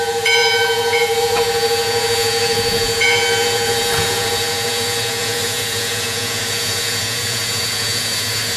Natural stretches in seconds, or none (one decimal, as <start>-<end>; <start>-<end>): none